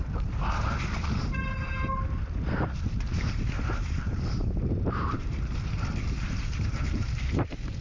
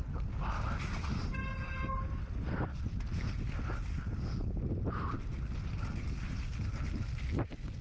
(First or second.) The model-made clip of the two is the first